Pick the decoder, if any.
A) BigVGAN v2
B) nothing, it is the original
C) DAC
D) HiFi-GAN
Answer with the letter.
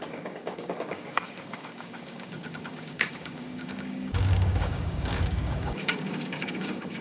C